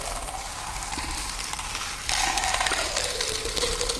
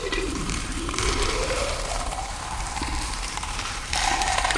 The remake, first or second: second